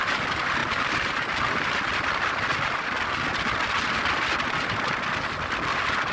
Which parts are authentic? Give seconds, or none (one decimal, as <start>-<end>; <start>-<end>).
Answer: 0.0-6.1

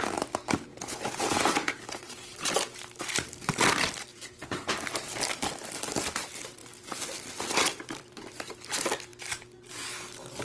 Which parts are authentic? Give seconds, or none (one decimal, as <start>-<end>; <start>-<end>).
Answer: 0.0-0.7; 1.8-4.1; 4.7-10.4

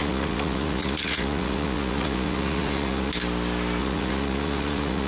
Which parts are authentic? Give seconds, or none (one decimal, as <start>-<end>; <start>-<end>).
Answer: 3.1-3.8

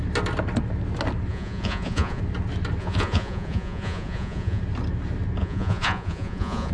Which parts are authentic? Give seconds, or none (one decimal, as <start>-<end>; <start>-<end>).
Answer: 0.0-1.3; 2.2-2.8; 4.6-5.4

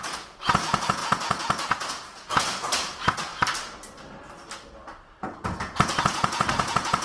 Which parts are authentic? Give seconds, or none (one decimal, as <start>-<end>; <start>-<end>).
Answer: 3.3-5.2

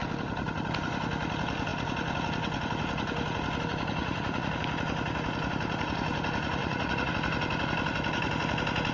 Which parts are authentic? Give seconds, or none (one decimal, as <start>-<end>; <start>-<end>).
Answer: 0.0-4.0; 4.5-6.6; 7.1-8.9

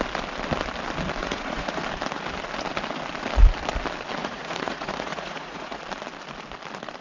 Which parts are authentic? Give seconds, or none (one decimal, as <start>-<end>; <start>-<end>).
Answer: 0.0-1.2; 1.8-4.2; 5.8-7.0

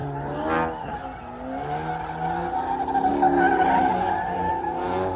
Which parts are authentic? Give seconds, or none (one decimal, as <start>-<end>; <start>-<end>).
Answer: 0.0-5.2